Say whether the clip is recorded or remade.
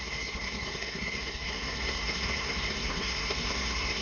remade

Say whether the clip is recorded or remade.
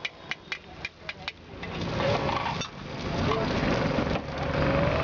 recorded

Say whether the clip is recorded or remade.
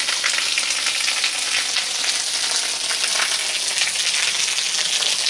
recorded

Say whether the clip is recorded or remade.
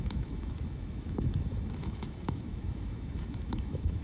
remade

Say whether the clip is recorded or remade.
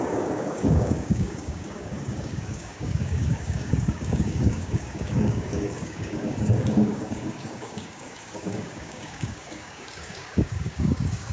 remade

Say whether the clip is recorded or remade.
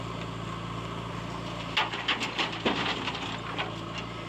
recorded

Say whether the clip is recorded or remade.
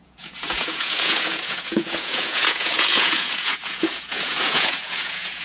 remade